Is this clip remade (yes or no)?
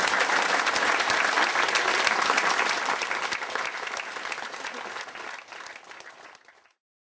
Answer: no